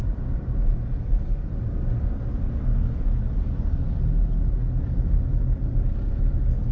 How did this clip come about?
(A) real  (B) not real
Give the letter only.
A